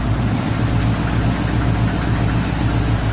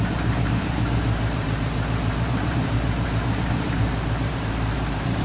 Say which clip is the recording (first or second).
first